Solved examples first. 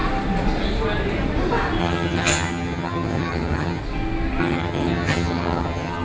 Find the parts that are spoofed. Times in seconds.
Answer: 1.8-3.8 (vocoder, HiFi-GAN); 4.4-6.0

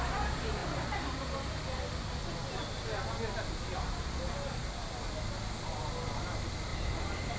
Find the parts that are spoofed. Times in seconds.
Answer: none

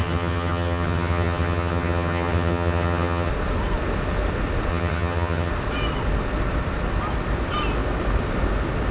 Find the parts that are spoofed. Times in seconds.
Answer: 0.0-3.3 (vocoder, HiFi-GAN); 4.7-5.5